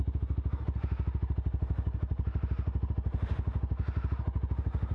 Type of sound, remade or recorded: recorded